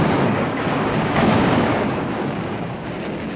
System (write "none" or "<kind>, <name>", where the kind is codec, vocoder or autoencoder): codec, DAC